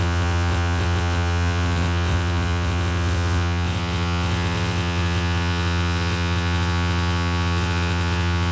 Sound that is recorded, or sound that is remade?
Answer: remade